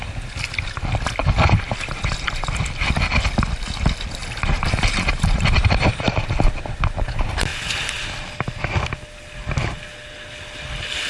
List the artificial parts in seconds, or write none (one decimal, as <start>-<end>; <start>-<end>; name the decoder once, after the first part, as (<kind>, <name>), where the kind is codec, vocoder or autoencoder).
1.2-2.1 (vocoder, BigVGAN v2); 4.2-6.2